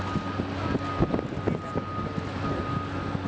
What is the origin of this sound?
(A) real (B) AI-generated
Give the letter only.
A